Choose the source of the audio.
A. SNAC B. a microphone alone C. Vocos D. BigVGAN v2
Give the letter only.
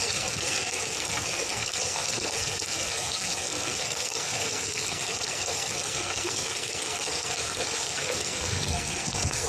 A